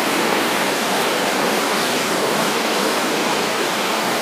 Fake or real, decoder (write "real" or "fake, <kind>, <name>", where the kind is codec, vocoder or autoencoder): fake, codec, DAC